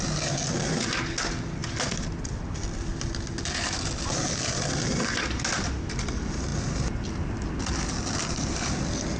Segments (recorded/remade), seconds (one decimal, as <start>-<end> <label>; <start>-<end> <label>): 0.0-9.2 recorded